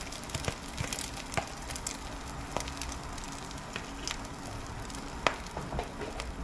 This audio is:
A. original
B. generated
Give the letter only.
A